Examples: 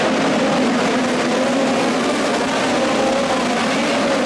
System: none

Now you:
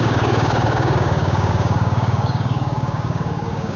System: codec, DAC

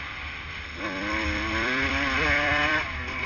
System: vocoder, BigVGAN v2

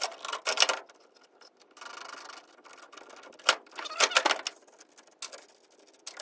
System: none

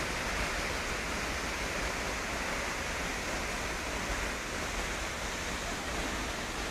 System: none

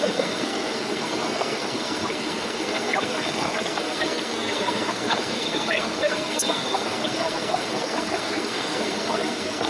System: codec, SNAC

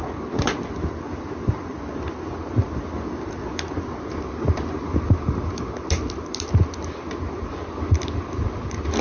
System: none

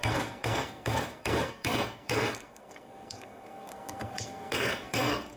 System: codec, SNAC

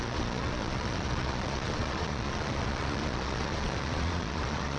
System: vocoder, Vocos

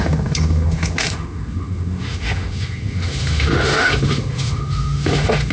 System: autoencoder, DAC-VAE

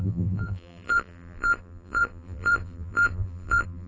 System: vocoder, BigVGAN v2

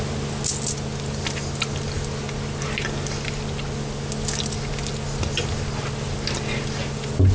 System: none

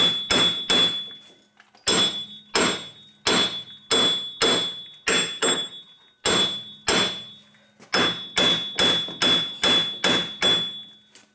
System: none